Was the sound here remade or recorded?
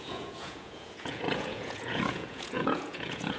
remade